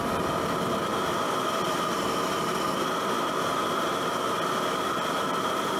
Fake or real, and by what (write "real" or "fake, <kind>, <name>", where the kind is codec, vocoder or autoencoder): fake, vocoder, BigVGAN v2